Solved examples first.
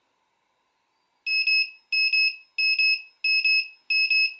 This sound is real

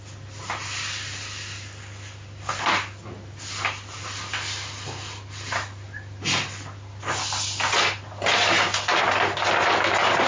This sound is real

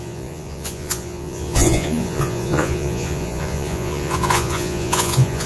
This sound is fake